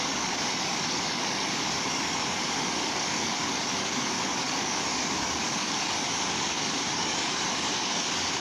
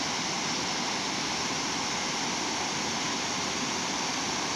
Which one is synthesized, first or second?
first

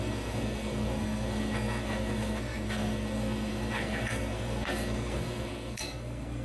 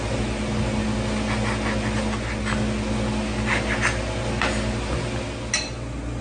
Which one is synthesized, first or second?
first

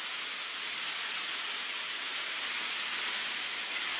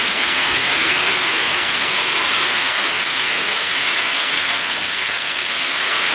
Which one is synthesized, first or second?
second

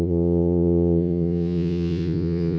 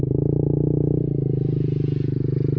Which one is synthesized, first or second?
first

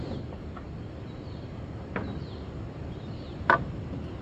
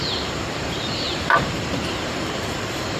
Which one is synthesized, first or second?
second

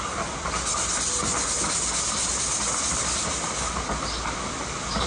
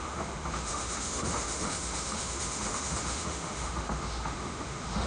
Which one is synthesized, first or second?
second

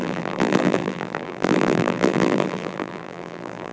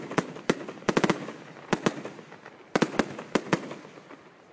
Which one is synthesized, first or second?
first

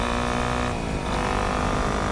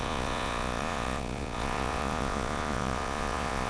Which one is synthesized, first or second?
second